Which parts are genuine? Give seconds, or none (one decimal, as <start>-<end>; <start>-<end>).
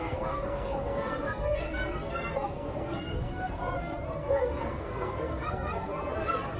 none